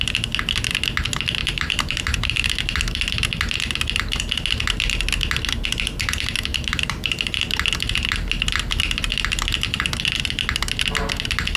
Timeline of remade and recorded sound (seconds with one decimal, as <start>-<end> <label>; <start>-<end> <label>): 0.0-1.4 recorded; 1.4-2.5 remade; 2.5-6.5 recorded; 6.5-7.4 remade; 7.4-11.6 recorded